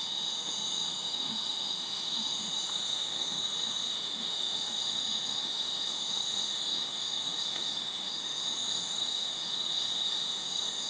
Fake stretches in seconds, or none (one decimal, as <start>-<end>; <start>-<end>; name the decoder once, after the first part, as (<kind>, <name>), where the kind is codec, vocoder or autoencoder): 0.0-10.9 (autoencoder, DAC-VAE)